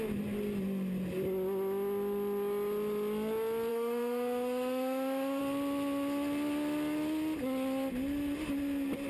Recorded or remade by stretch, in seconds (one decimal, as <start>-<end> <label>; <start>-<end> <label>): 0.0-3.7 recorded; 3.7-5.4 remade; 5.4-9.1 recorded